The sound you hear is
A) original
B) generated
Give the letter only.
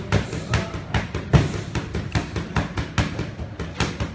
A